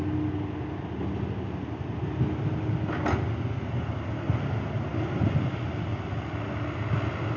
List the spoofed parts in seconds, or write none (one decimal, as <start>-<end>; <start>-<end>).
none